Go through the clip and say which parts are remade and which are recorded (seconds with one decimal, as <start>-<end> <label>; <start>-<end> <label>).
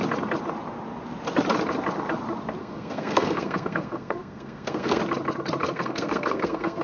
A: 0.0-2.6 recorded; 2.6-5.0 remade; 5.0-5.6 recorded; 5.6-6.8 remade